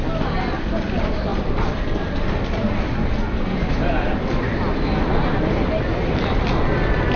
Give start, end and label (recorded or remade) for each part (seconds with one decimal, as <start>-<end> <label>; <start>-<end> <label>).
0.0-7.2 recorded